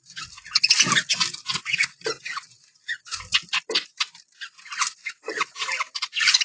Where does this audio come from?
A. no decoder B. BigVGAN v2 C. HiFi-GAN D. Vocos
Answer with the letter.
A